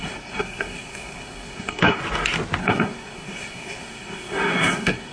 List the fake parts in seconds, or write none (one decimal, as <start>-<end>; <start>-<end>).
0.0-2.0; 2.6-5.1